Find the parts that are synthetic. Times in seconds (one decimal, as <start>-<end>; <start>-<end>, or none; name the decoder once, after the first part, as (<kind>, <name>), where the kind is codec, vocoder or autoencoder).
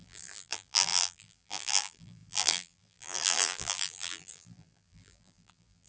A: 0.0-5.9 (vocoder, BigVGAN v2)